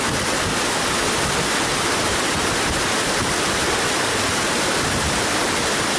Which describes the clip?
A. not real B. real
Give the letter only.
B